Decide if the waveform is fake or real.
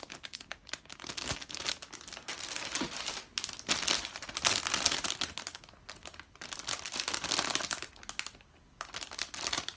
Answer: real